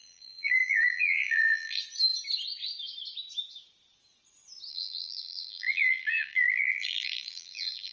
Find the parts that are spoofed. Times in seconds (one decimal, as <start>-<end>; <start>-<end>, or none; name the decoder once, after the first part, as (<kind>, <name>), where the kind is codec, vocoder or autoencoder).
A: 0.0-1.8 (vocoder, BigVGAN v2); 4.7-7.9